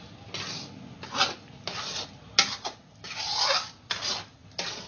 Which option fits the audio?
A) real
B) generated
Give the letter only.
A